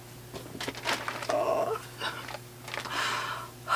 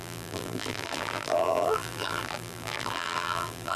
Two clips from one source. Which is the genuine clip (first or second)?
first